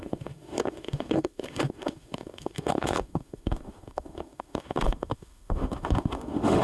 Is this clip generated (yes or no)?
yes